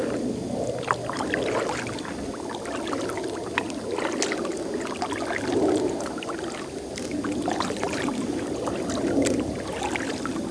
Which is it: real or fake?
real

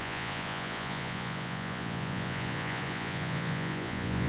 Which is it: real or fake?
fake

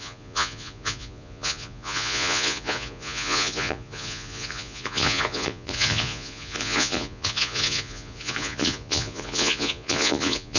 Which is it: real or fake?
fake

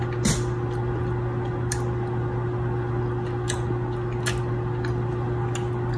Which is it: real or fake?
real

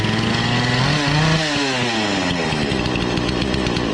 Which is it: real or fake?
real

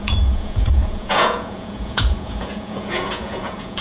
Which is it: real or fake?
fake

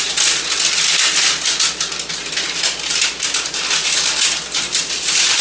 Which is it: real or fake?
real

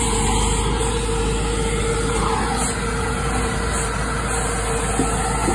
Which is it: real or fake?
real